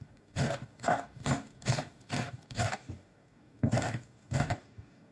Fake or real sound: fake